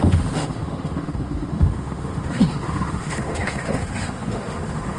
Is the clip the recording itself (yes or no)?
no